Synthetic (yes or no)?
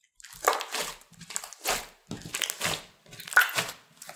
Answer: no